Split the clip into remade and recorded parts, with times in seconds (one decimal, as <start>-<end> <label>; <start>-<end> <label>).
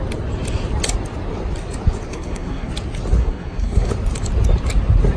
0.0-2.1 recorded; 2.1-2.7 remade; 2.7-3.2 recorded; 3.2-3.9 remade; 3.9-5.2 recorded